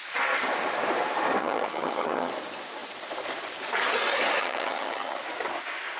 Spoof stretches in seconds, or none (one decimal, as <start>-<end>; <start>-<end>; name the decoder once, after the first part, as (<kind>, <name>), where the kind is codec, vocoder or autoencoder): 1.4-2.3 (vocoder, HiFi-GAN); 4.4-5.2